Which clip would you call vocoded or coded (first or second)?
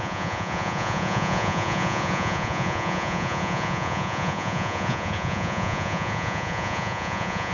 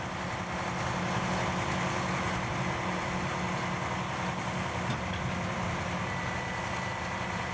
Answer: first